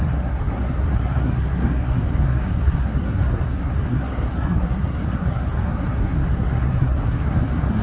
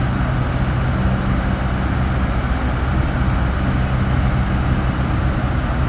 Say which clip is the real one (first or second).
second